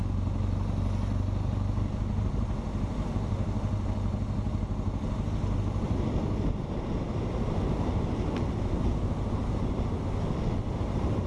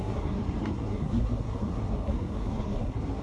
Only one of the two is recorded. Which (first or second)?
first